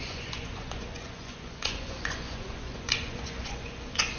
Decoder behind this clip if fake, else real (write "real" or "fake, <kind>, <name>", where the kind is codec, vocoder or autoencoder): fake, vocoder, Vocos